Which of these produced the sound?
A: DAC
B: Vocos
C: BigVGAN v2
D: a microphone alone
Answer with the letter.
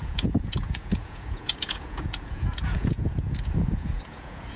B